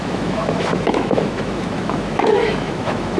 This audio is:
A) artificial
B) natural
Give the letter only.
A